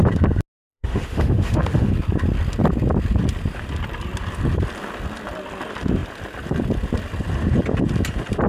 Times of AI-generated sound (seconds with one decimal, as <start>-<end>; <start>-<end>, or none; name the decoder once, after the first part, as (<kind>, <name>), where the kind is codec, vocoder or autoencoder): 0.7-1.9 (autoencoder, DAC-VAE)